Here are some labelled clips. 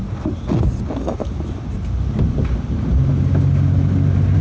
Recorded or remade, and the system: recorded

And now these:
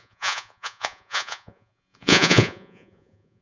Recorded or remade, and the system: remade, vocoder, Vocos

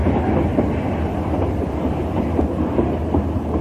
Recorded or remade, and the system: recorded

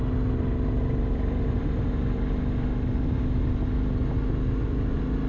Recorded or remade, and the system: recorded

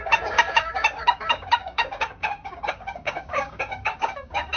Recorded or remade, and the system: remade, codec, DAC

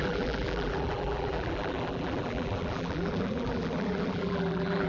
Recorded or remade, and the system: remade, vocoder, BigVGAN v2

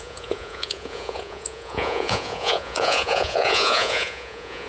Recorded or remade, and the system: remade, vocoder, Vocos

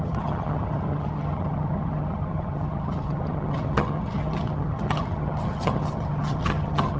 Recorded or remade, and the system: remade, vocoder, HiFi-GAN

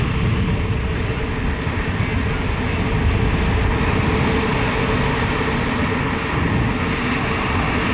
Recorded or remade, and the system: recorded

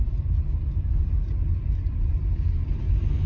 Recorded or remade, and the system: recorded